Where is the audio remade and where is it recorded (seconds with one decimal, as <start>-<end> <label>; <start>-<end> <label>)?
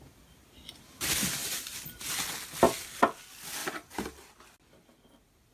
0.0-1.4 recorded; 1.4-2.0 remade; 2.0-5.5 recorded